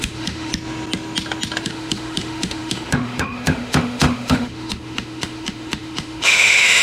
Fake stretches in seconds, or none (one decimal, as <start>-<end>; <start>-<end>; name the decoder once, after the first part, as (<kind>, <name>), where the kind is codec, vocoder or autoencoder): 0.0-0.5 (autoencoder, DAC-VAE); 1.6-6.8